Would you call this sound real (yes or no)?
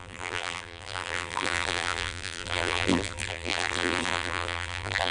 no